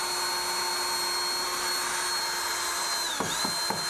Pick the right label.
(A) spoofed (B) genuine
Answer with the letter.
B